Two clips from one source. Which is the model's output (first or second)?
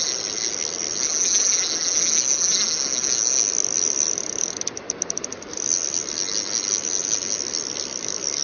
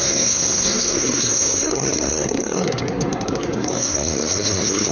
second